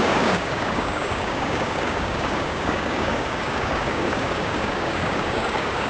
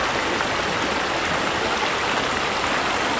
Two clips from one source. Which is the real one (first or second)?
second